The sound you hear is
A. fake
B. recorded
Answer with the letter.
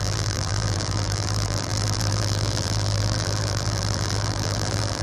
A